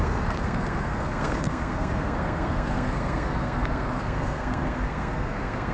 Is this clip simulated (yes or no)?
yes